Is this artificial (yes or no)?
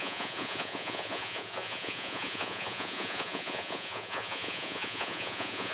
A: yes